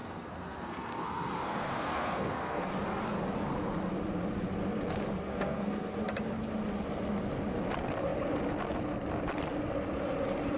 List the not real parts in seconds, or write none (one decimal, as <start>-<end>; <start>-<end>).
0.0-2.7; 5.3-5.9